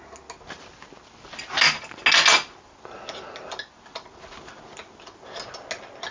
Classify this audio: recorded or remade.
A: recorded